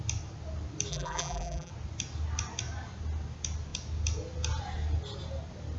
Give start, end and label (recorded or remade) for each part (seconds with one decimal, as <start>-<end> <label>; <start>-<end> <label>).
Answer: 0.0-0.9 recorded; 0.9-1.7 remade; 1.7-5.8 recorded